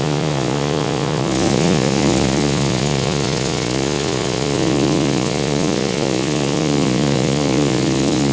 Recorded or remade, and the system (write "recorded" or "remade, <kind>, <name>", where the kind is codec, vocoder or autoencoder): remade, vocoder, Vocos